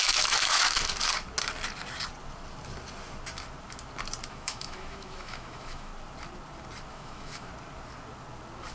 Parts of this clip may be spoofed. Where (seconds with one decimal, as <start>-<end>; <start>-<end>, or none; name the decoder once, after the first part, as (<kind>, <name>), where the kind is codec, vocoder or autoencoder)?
0.0-0.9 (autoencoder, DAC-VAE); 4.3-5.9; 6.9-7.5